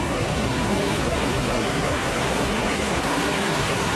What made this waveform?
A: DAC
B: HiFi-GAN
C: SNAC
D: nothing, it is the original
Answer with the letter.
C